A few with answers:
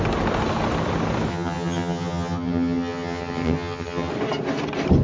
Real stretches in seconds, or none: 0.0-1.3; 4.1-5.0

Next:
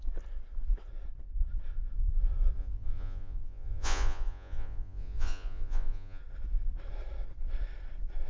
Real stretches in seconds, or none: 0.0-2.6; 6.2-8.3

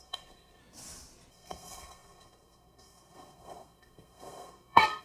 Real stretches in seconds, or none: 0.6-1.3

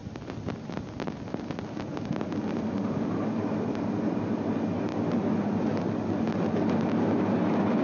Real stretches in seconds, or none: 4.3-7.8

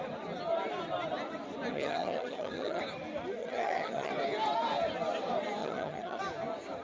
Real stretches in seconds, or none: 0.0-1.7; 2.8-3.4; 4.1-5.6; 6.2-6.8